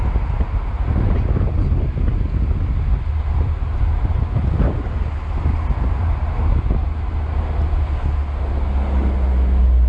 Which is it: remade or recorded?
recorded